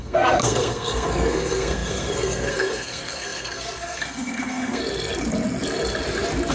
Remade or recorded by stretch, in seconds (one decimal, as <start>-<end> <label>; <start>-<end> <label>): 0.0-4.8 remade; 4.8-6.5 recorded